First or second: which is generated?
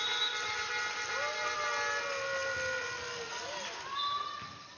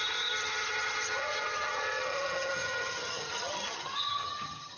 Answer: second